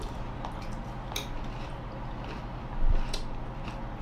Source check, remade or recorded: remade